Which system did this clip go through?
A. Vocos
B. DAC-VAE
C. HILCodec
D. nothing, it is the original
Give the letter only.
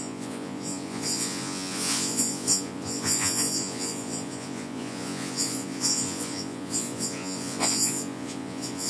A